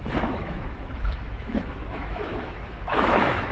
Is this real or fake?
fake